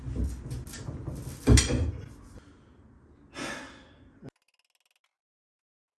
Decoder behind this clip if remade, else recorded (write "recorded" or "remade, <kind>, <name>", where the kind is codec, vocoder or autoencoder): recorded